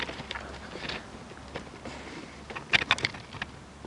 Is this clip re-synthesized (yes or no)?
no